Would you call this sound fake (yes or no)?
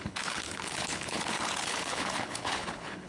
yes